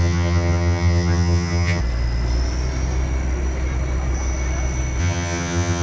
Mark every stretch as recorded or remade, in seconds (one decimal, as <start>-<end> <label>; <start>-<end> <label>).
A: 0.0-1.8 remade; 1.8-5.0 recorded; 5.0-5.8 remade